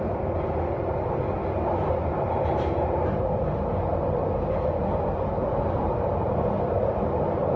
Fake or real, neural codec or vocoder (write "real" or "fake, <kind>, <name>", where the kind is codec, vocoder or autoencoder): real